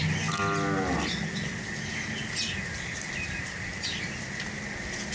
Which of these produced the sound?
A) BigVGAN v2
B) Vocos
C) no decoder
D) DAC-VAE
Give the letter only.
C